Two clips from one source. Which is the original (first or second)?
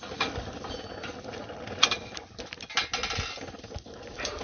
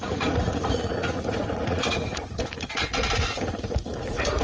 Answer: first